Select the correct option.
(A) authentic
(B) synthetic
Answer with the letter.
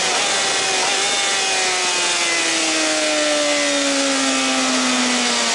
A